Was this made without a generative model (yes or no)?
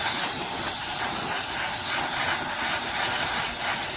yes